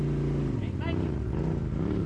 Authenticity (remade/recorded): recorded